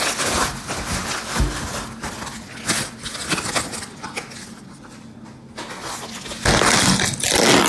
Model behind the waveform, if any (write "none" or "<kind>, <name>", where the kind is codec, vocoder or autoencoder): none